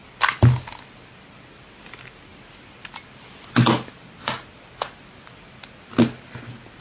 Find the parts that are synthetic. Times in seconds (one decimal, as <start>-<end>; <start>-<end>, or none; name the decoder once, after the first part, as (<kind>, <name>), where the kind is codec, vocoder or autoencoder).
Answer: none